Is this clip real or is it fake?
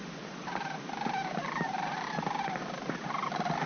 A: fake